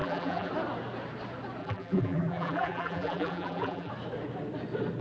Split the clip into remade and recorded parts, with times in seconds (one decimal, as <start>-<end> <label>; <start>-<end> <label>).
0.0-0.5 remade; 0.5-1.6 recorded; 1.6-3.9 remade; 3.9-5.0 recorded